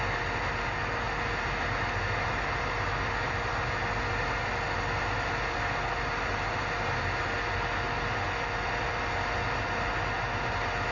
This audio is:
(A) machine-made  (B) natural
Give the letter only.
B